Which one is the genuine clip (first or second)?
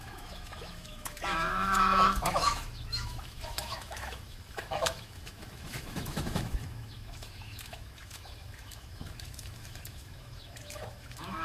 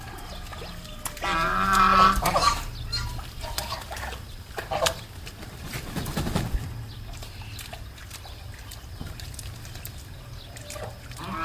second